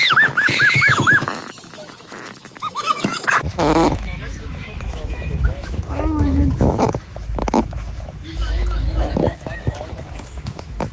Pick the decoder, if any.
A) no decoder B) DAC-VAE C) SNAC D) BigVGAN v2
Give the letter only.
B